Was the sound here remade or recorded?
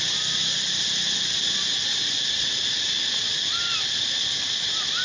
recorded